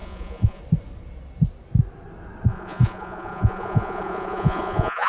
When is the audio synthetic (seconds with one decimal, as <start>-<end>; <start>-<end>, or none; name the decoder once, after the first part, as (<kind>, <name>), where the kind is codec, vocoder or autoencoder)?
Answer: 0.0-0.6 (vocoder, Vocos); 2.5-5.1

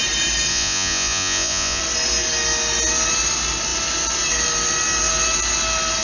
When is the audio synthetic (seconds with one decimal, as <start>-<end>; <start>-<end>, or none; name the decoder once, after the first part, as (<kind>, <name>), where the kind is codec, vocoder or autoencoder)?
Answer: 0.5-1.8 (vocoder, Vocos)

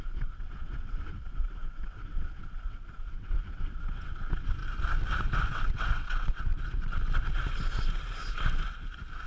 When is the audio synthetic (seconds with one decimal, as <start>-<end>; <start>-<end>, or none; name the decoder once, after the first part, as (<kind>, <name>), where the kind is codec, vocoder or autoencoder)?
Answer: 0.0-4.6 (vocoder, WaveNeXt); 5.5-6.5

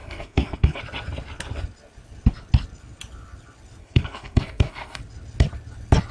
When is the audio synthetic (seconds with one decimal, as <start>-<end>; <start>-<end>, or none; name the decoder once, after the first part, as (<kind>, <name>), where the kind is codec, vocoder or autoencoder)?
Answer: 0.0-0.8 (codec, SNAC); 3.8-5.0

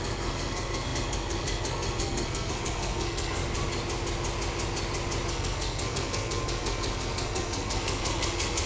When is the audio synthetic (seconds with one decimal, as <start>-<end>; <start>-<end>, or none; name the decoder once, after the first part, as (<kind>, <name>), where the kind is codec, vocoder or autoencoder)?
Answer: 0.0-3.4 (codec, SNAC); 5.3-8.7

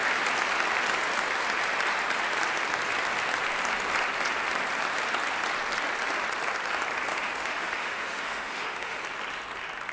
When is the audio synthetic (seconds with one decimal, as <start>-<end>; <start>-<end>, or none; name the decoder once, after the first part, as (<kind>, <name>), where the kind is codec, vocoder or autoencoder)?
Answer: 7.1-9.0 (autoencoder, DAC-VAE)

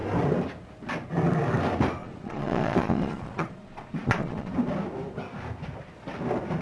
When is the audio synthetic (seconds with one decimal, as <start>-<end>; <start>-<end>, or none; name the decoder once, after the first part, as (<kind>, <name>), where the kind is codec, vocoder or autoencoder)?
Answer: 2.0-4.5 (vocoder, Vocos)